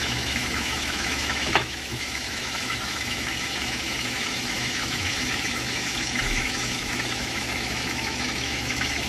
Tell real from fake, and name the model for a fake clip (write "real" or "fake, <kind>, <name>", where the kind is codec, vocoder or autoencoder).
fake, autoencoder, DAC-VAE